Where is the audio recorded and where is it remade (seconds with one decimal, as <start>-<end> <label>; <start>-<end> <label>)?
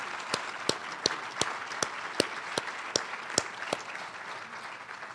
0.0-5.1 recorded